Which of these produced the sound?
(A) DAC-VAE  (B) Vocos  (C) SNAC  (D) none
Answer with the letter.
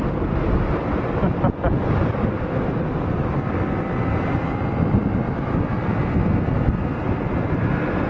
D